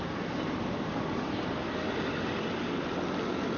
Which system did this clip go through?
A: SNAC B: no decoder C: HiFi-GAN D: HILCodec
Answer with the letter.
B